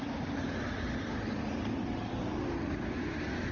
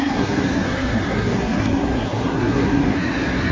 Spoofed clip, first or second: second